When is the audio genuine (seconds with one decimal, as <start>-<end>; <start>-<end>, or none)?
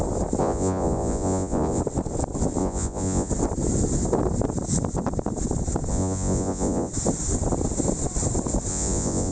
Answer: 0.0-0.4; 1.8-2.6; 3.3-5.9; 6.9-8.7